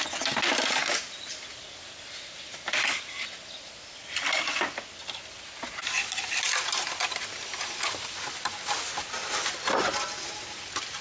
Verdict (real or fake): real